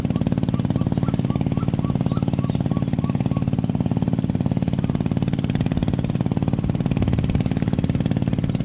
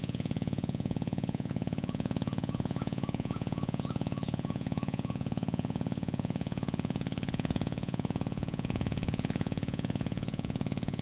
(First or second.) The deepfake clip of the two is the second